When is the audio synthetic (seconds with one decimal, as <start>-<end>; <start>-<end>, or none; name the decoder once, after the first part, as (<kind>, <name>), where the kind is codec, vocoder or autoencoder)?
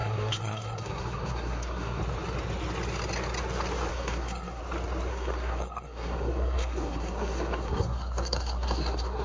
0.0-2.0 (codec, SNAC); 3.9-4.6; 5.1-9.2